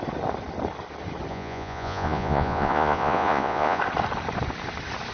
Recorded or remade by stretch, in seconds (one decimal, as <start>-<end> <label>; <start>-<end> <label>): 0.0-1.3 recorded; 1.3-3.8 remade; 3.8-5.1 recorded